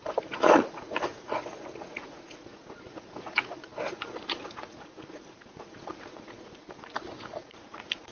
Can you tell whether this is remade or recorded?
remade